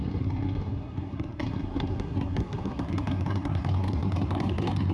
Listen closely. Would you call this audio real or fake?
fake